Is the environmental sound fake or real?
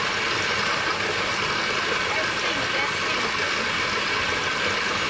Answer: real